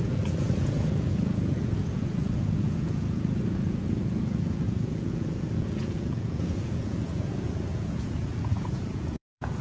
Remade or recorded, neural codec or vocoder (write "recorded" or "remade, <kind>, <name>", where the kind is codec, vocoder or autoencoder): remade, vocoder, Vocos